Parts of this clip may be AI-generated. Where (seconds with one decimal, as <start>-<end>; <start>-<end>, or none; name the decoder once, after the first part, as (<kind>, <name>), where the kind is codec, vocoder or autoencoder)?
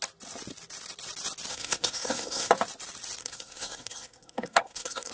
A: 1.5-2.5 (codec, SNAC); 3.2-5.1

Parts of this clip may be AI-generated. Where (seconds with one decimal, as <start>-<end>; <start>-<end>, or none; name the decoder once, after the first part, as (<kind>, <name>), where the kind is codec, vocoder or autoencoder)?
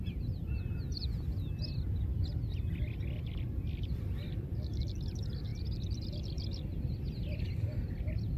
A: none